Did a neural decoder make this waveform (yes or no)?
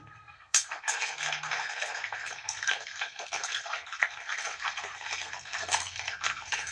yes